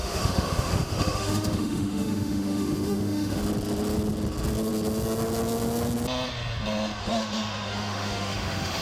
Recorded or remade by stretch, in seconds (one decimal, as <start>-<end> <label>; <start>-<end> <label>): 0.0-3.4 remade; 3.4-7.0 recorded; 7.0-8.8 remade